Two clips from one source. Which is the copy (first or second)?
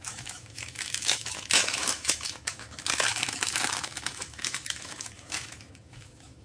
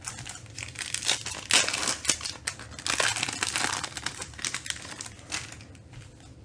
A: first